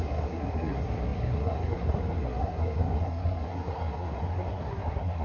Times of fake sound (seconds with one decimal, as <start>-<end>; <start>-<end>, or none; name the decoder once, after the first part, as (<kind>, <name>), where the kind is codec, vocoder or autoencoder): 0.0-5.2 (codec, SNAC)